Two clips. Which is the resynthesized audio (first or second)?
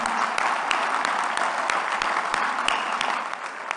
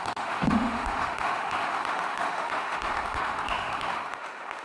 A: second